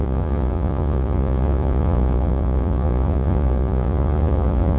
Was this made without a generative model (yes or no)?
no